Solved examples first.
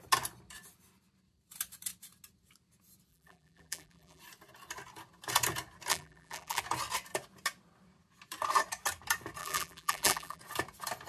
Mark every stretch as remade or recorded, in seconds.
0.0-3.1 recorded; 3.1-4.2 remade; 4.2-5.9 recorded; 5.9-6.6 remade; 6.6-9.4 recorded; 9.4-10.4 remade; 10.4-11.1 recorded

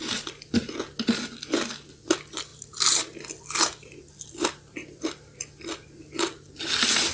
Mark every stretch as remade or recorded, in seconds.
0.0-2.5 recorded; 2.5-3.3 remade; 3.3-4.8 recorded; 4.8-5.4 remade; 5.4-7.1 recorded

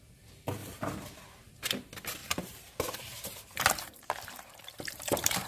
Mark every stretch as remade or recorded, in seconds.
0.0-0.6 recorded; 0.6-1.7 remade; 1.7-2.2 recorded; 2.2-5.5 remade

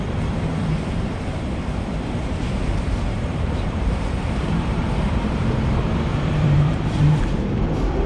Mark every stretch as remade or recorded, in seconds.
0.0-0.6 recorded; 0.6-5.5 remade; 5.5-6.1 recorded; 6.1-7.2 remade; 7.2-8.1 recorded

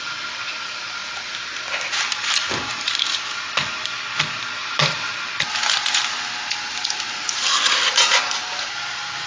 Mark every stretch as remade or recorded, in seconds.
0.0-1.0 recorded; 1.0-3.4 remade; 3.4-4.6 recorded; 4.6-5.2 remade; 5.2-9.3 recorded

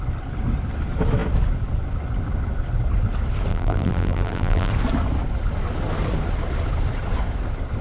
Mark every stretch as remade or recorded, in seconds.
0.0-3.5 recorded; 3.5-4.7 remade; 4.7-7.8 recorded